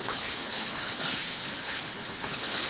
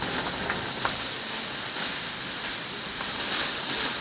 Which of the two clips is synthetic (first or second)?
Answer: first